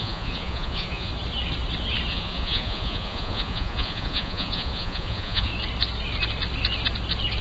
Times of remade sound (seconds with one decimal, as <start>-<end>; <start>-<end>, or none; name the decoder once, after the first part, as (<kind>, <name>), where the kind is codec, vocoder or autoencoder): 0.0-1.1 (vocoder, Vocos); 2.1-5.5